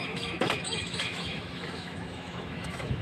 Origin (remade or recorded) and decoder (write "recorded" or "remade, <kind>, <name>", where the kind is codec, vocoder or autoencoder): remade, autoencoder, DAC-VAE